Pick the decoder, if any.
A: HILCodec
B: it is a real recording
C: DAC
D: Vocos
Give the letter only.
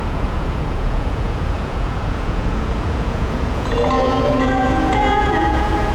D